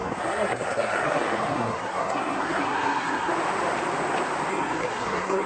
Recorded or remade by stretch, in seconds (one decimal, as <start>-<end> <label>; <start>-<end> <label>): 0.0-3.3 remade; 3.3-4.5 recorded; 4.5-5.5 remade